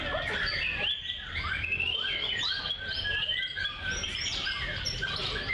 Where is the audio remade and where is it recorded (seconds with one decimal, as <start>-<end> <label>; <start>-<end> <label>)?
0.0-5.5 remade